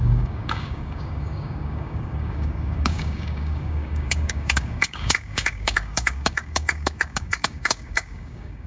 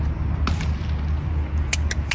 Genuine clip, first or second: second